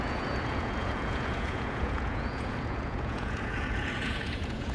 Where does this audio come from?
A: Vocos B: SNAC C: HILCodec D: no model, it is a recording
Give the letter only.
A